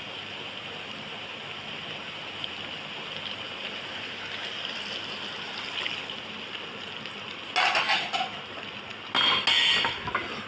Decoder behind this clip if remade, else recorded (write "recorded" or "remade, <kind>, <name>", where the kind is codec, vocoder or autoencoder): recorded